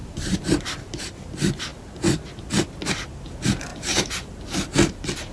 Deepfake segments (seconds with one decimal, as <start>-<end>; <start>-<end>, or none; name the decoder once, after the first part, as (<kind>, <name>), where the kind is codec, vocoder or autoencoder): 0.0-0.9 (vocoder, BigVGAN v2); 3.7-4.3